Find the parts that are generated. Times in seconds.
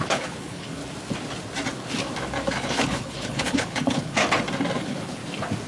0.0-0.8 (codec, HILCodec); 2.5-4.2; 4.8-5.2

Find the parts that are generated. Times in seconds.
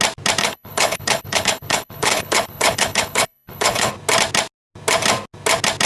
0.4-3.9 (codec, HILCodec)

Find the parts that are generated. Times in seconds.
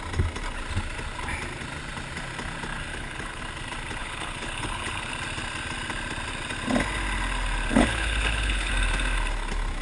2.9-3.4 (codec, HILCodec); 4.0-5.1; 7.7-8.7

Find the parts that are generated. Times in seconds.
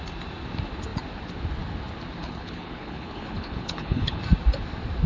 2.2-4.2 (codec, HILCodec)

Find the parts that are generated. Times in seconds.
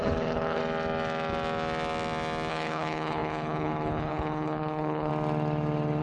0.0-0.6 (codec, HILCodec); 2.5-5.1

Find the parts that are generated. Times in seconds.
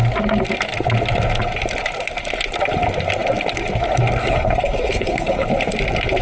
4.2-5.5 (codec, HILCodec)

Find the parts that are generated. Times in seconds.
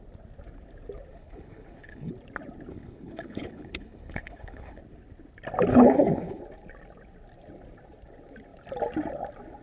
1.1-2.1 (codec, HILCodec); 2.7-4.8; 5.7-6.4